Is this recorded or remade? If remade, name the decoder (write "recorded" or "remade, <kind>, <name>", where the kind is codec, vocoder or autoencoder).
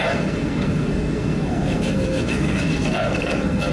remade, codec, SNAC